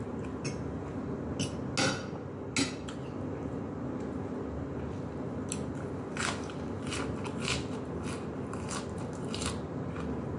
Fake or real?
real